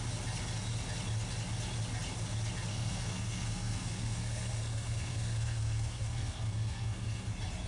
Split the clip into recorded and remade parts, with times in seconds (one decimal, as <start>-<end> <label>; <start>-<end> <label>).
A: 0.0-2.7 recorded; 2.7-7.3 remade; 7.3-7.7 recorded